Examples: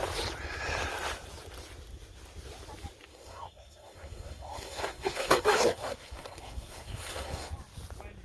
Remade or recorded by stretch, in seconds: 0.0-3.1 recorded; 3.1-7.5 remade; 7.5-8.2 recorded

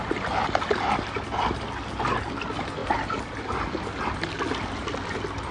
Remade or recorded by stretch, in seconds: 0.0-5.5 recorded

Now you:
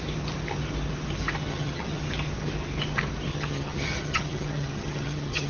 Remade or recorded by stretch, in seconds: 0.0-1.5 recorded; 1.5-2.0 remade; 2.0-3.3 recorded; 3.3-5.5 remade

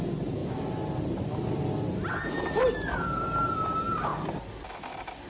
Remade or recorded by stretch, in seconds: 0.0-4.1 recorded; 4.1-4.7 remade; 4.7-5.3 recorded